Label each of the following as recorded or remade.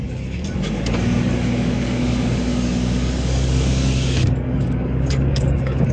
remade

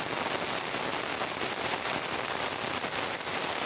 recorded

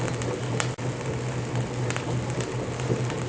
recorded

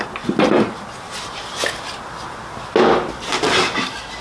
recorded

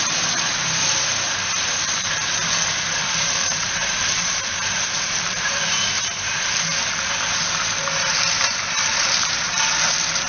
remade